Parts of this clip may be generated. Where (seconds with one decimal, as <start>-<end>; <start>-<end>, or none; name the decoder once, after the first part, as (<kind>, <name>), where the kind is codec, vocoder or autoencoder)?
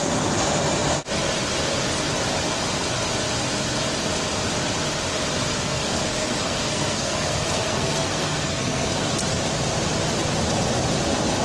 5.5-9.1 (codec, SNAC)